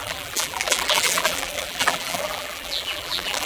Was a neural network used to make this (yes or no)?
yes